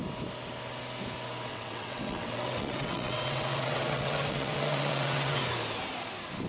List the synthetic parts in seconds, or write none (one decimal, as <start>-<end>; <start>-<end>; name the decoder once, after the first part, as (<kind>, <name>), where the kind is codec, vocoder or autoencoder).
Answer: 1.5-5.4 (vocoder, WaveNeXt)